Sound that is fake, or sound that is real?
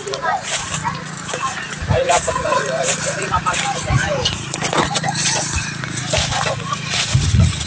fake